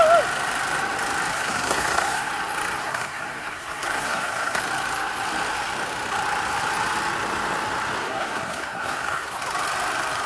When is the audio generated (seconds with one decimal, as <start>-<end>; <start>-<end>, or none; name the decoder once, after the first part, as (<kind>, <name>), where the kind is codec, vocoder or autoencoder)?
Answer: 1.3-2.3 (codec, SNAC); 2.8-4.6; 8.0-9.4